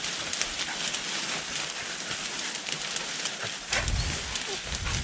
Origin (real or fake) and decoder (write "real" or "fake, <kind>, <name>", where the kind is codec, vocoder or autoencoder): real